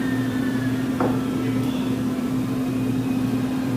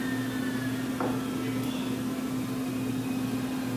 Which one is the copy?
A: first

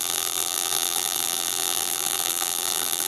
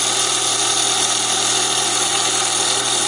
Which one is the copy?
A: first